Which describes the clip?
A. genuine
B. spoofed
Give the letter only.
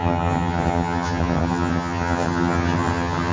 B